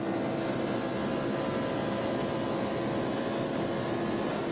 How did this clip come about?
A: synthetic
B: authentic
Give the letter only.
B